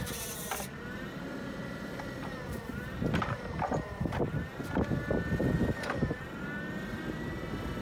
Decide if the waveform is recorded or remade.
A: recorded